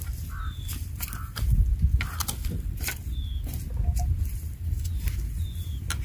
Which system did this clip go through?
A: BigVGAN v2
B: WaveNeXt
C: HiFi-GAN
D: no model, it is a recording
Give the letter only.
D